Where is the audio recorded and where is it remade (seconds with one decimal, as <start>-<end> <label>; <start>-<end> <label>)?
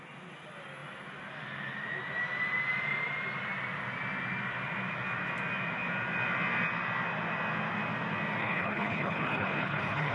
0.0-8.4 recorded; 8.4-10.1 remade